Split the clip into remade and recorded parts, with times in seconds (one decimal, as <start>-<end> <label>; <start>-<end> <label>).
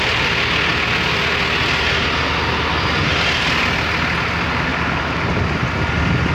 0.0-6.3 recorded